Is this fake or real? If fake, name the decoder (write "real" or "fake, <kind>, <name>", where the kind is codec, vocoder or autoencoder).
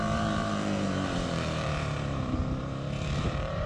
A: fake, vocoder, BigVGAN v2